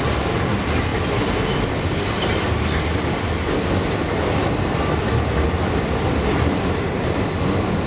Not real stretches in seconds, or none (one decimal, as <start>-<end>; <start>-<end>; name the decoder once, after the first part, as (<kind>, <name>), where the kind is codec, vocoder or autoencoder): none